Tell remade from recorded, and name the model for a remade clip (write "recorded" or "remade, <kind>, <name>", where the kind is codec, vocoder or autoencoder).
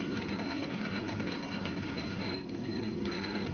remade, codec, SNAC